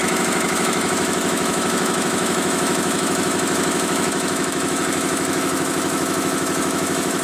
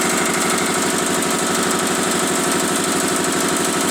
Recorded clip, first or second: second